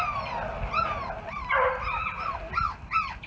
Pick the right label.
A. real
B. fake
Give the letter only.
A